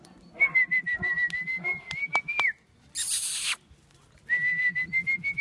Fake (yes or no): no